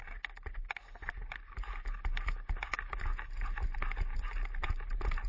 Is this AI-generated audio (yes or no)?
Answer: no